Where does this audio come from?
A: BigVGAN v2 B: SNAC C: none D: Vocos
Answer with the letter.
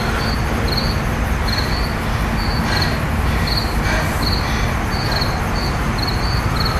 C